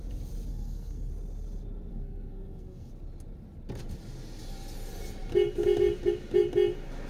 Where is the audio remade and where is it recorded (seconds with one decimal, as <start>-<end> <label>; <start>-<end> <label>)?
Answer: 0.0-0.5 recorded; 0.5-1.1 remade; 1.1-1.9 recorded; 1.9-2.9 remade; 2.9-7.1 recorded